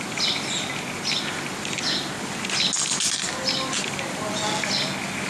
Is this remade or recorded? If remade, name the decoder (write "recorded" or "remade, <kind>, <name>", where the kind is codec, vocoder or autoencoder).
recorded